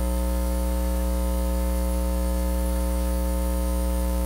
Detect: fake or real fake